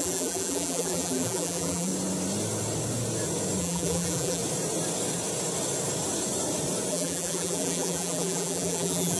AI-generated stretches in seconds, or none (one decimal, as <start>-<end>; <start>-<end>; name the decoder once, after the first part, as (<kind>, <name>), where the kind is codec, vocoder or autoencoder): 0.0-1.9 (vocoder, BigVGAN v2); 3.6-4.4; 6.9-9.2